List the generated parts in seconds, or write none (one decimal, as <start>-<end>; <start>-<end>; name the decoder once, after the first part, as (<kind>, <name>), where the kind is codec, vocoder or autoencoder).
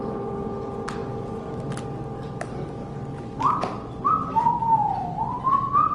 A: none